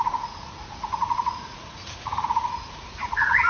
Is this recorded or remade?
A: remade